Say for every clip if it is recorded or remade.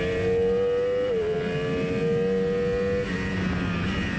recorded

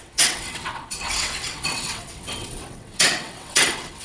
remade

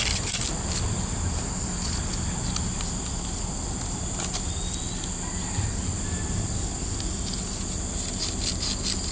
recorded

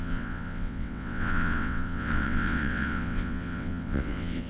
remade